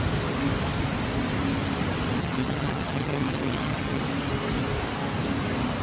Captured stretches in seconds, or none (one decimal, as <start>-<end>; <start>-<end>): 0.0-2.2; 4.0-5.8